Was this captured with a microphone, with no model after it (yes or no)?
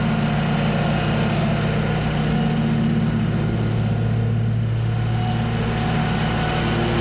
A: yes